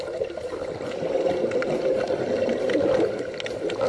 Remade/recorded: recorded